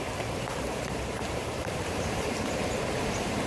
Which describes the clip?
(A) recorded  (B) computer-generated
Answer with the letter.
B